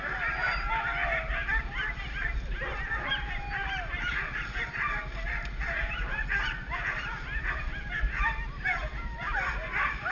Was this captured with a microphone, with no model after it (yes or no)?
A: yes